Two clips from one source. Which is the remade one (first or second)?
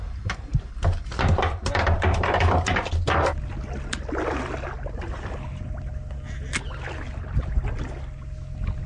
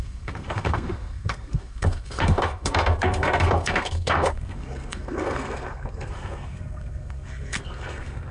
second